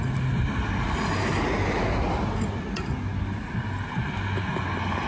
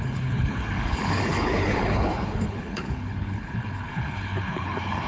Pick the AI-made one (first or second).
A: second